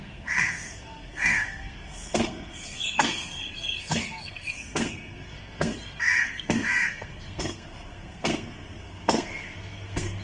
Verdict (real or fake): fake